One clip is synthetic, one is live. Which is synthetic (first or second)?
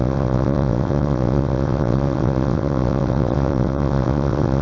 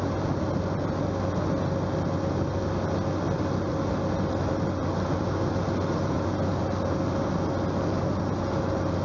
first